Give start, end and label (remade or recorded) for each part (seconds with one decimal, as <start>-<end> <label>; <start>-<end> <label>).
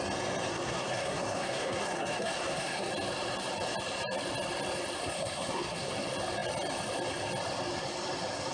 0.0-0.5 recorded; 0.5-2.9 remade; 2.9-5.0 recorded; 5.0-5.9 remade; 5.9-8.5 recorded